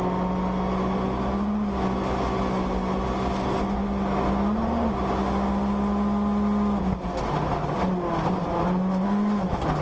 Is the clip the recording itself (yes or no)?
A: yes